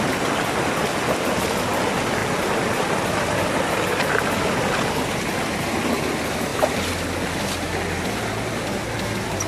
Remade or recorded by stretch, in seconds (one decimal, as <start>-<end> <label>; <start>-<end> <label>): 0.0-6.5 recorded; 6.5-8.5 remade; 8.5-9.5 recorded